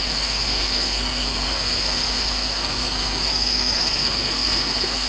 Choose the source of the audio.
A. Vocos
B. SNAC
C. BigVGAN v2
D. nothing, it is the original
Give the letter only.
B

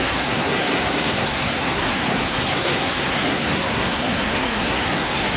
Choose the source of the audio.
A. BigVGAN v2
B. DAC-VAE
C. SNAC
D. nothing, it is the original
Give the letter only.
C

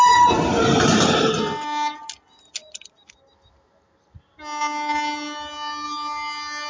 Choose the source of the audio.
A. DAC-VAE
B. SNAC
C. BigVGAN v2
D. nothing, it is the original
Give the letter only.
D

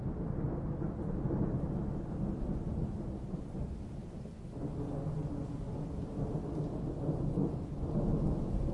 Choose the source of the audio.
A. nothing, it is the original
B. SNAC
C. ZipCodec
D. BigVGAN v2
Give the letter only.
A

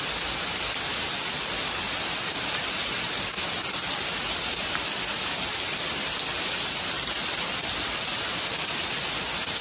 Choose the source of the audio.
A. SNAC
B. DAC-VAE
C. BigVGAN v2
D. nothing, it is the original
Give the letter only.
D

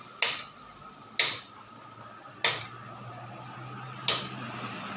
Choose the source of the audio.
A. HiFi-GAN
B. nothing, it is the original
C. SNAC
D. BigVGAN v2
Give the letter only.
B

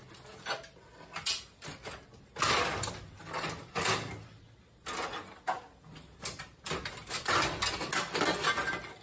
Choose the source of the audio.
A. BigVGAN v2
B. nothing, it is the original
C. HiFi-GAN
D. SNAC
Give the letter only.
B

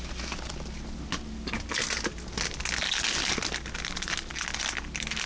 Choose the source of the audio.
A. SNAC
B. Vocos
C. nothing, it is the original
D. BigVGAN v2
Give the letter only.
C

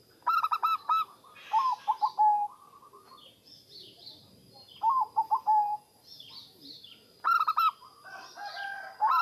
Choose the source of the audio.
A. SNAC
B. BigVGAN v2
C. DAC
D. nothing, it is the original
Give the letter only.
D